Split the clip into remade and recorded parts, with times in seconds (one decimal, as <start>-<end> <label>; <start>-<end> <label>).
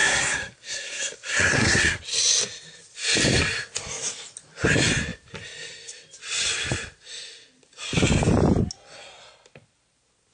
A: 0.0-2.0 remade; 2.0-10.3 recorded